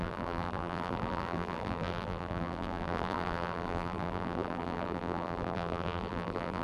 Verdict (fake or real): fake